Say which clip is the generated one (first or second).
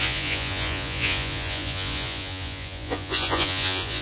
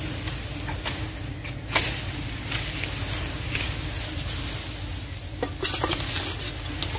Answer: first